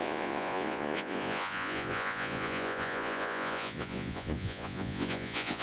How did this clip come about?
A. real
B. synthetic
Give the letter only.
B